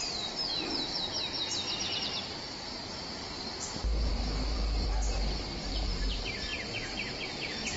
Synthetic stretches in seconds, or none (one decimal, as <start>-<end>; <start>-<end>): 0.0-1.1; 2.0-6.5; 7.3-7.8